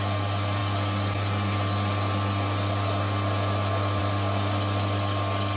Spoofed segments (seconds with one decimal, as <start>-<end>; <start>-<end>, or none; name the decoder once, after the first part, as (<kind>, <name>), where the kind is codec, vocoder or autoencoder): none